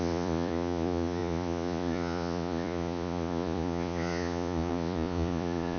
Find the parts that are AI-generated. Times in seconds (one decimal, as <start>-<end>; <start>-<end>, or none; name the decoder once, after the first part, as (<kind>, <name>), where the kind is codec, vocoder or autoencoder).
0.0-5.8 (vocoder, Vocos)